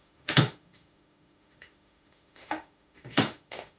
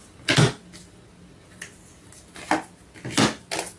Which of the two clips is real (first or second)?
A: second